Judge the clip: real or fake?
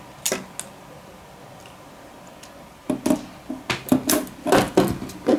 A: real